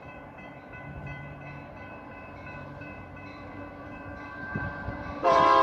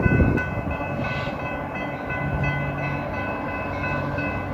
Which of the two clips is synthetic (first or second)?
first